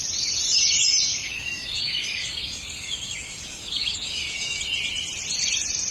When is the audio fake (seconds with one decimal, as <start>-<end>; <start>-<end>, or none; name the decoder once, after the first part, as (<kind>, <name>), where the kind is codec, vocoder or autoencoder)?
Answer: 1.1-4.6 (codec, DAC)